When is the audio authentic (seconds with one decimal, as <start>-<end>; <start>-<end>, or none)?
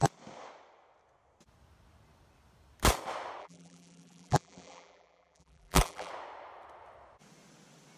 0.0-3.4; 6.1-8.0